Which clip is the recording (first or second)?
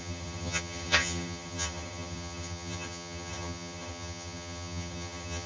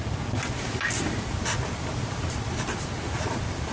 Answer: second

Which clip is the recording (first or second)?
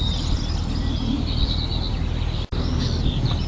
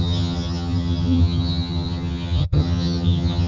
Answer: first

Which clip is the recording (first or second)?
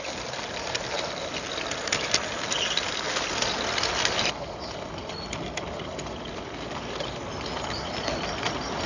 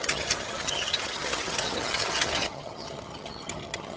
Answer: first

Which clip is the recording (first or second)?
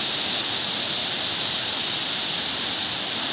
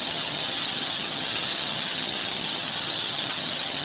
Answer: first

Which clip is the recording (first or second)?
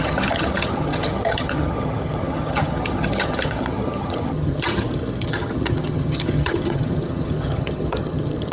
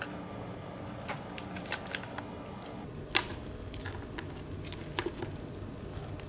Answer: second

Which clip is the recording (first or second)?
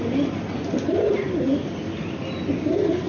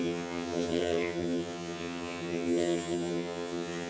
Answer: first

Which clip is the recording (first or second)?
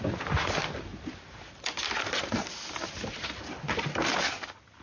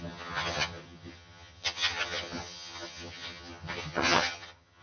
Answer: first